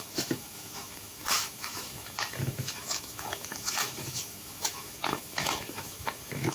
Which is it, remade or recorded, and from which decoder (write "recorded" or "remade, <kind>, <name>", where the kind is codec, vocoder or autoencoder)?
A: remade, autoencoder, DAC-VAE